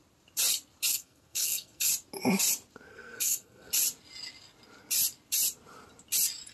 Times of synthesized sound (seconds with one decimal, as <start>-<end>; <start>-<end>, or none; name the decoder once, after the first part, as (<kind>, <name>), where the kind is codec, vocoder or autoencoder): 0.9-1.9 (codec, SNAC); 2.9-3.7